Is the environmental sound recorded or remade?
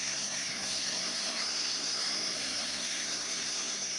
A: remade